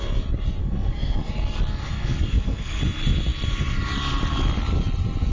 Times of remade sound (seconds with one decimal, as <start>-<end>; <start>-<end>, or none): 0.6-1.3; 1.8-2.8